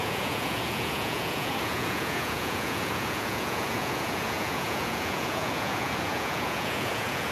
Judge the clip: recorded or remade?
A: remade